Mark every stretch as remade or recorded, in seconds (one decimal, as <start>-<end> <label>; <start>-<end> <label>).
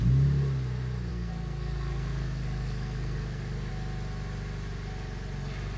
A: 0.0-1.1 recorded; 1.1-3.7 remade; 3.7-5.8 recorded